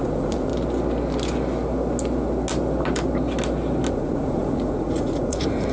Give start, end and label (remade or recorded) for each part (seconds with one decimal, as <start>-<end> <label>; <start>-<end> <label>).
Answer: 0.0-0.5 remade; 0.5-3.9 recorded; 3.9-5.7 remade